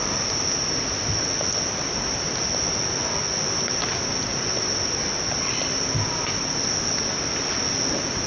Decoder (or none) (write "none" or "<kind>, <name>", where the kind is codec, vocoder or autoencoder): none